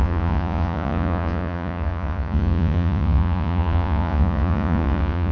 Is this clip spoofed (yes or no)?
yes